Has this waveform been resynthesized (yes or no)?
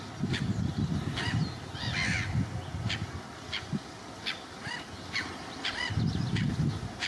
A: no